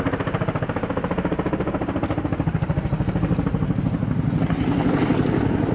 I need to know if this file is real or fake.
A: real